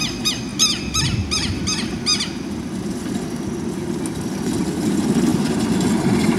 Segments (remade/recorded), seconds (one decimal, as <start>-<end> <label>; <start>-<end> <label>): 0.0-5.3 recorded; 5.3-6.4 remade